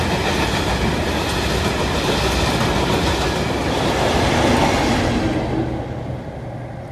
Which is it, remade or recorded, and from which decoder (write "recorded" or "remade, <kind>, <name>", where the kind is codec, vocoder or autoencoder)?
recorded